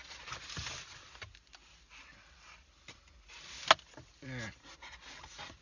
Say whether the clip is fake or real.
real